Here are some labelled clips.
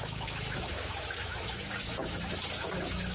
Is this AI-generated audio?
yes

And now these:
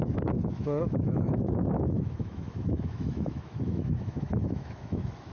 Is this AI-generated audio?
yes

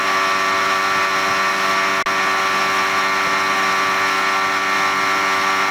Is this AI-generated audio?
no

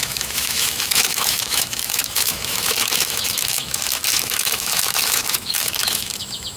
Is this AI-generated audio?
yes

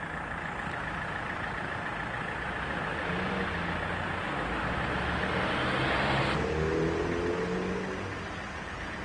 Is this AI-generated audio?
no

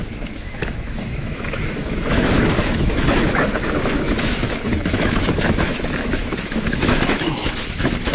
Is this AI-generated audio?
yes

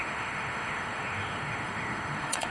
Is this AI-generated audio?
yes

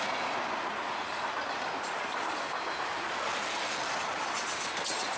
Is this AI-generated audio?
no